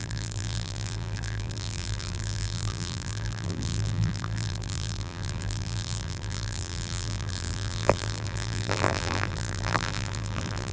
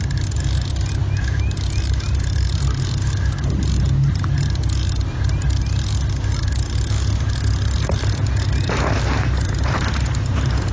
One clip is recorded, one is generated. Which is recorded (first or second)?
second